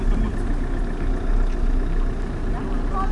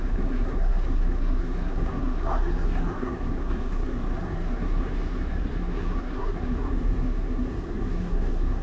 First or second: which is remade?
second